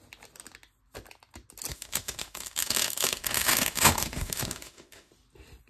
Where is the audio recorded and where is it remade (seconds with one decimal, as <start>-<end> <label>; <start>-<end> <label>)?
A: 0.0-1.7 recorded; 1.7-5.1 remade; 5.1-5.7 recorded